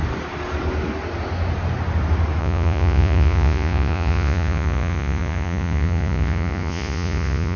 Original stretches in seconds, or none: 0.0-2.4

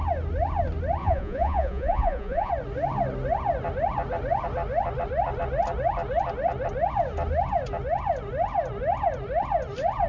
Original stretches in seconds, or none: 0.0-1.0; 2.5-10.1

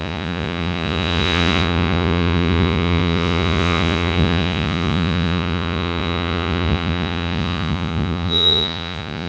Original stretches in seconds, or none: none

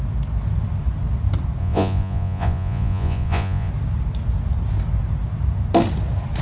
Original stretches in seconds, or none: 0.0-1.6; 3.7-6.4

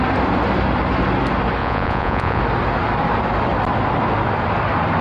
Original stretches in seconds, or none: 0.0-1.6; 2.4-5.0